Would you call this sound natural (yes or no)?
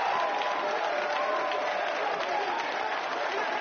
yes